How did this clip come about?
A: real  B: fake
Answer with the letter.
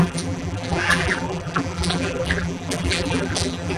B